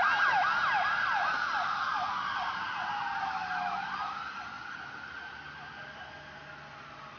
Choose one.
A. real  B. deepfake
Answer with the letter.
A